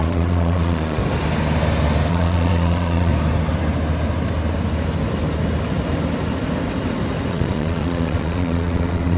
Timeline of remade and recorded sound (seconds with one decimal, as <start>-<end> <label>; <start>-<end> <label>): 0.0-1.0 remade; 1.0-2.1 recorded; 2.1-3.1 remade; 3.1-7.3 recorded; 7.3-9.2 remade